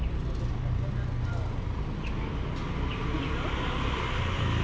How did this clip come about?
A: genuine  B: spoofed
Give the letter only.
A